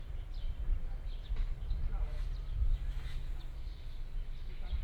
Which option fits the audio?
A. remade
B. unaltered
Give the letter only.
B